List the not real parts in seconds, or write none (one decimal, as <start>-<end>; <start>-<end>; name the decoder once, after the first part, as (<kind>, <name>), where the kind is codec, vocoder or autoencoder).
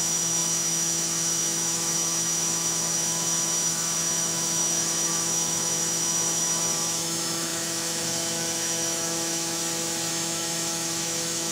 0.0-9.6 (autoencoder, DAC-VAE); 10.1-11.5